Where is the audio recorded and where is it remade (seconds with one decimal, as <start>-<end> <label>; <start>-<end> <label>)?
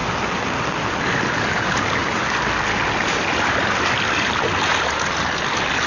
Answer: 0.0-5.9 recorded